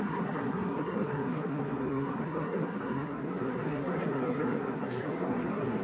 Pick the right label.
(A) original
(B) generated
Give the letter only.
B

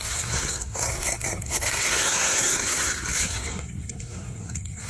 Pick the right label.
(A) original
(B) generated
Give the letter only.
B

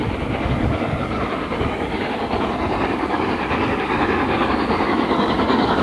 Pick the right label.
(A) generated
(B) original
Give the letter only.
A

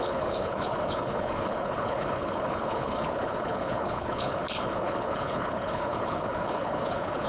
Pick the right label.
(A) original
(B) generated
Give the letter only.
B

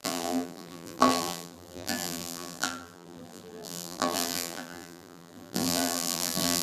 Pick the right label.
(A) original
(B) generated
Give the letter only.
B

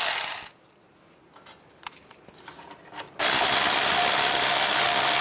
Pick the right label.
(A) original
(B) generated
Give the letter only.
A